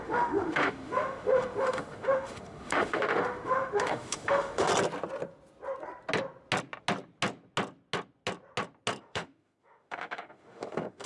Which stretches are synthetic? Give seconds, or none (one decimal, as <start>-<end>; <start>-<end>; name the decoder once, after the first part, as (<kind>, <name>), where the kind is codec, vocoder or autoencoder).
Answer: 0.0-4.7 (autoencoder, DAC-VAE); 9.0-11.1